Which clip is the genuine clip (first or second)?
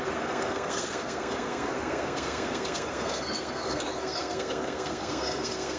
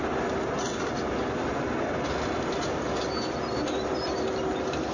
second